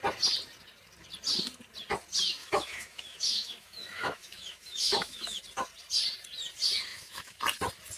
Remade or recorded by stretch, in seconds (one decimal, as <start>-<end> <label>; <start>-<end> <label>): 0.0-2.4 recorded; 2.4-5.4 remade; 5.4-6.9 recorded; 6.9-7.4 remade; 7.4-8.0 recorded